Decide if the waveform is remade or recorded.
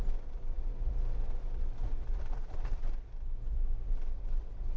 recorded